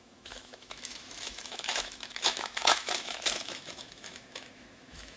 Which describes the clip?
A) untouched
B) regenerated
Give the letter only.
B